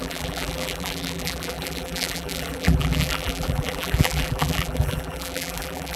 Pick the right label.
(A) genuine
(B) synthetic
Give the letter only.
B